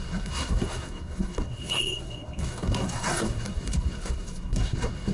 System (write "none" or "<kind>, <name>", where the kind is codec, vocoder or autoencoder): codec, SNAC